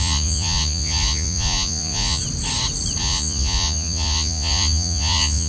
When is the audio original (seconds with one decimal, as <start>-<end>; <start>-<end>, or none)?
2.2-3.0